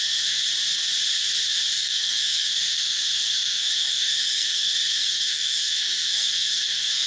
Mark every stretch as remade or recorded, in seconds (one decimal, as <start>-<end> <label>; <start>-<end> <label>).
0.0-0.4 remade; 0.4-1.7 recorded; 1.7-7.1 remade